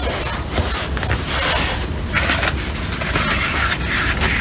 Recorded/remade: recorded